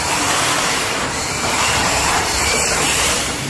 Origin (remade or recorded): remade